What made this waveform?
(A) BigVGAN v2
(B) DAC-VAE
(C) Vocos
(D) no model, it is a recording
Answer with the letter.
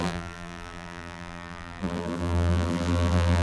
A